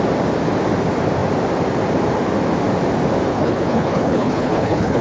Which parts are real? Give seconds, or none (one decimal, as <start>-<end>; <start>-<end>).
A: 0.0-3.3